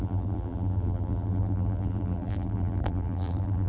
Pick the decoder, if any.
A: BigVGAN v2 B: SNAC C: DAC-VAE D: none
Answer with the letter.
A